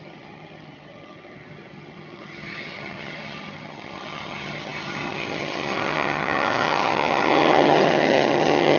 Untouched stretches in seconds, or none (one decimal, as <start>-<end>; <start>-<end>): none